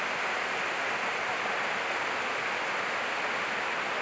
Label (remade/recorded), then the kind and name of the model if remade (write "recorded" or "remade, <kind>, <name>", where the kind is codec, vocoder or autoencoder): recorded